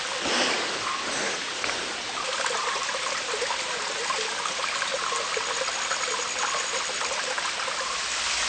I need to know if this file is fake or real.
real